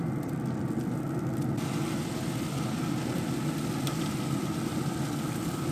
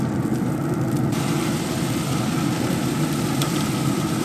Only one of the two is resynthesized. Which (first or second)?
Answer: second